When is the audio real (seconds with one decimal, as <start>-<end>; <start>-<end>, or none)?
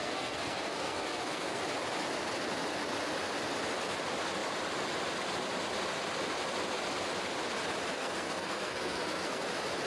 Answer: 1.6-7.9; 9.4-9.9